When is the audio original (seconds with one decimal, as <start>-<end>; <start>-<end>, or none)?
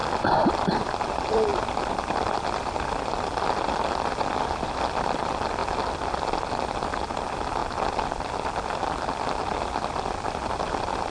7.6-9.9